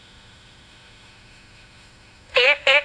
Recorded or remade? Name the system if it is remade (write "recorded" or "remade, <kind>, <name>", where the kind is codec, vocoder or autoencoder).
remade, autoencoder, DAC-VAE